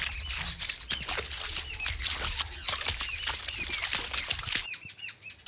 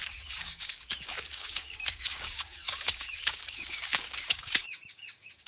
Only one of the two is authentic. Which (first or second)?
first